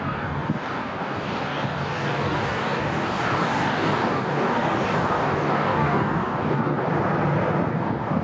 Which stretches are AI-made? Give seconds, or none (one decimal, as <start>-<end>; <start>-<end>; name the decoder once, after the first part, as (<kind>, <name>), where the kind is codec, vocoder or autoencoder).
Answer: 0.0-6.9 (codec, DAC); 7.7-8.2